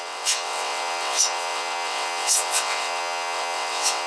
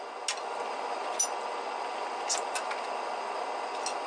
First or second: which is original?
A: second